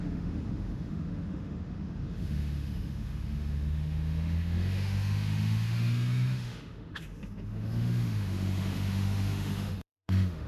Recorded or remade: remade